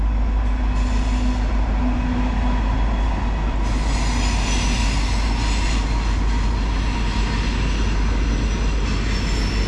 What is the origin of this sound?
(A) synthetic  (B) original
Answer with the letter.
B